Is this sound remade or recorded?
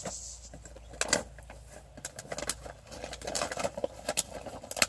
recorded